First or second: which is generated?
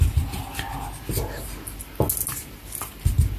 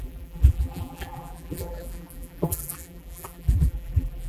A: second